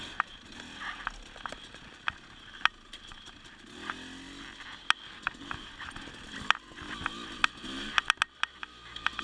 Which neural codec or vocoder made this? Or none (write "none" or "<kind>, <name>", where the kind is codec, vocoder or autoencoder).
none